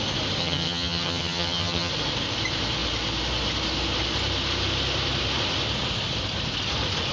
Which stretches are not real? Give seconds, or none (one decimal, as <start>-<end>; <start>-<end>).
0.4-1.9